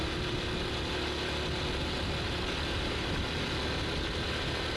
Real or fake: real